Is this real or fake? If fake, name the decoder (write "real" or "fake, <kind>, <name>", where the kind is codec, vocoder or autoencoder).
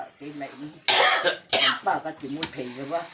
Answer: real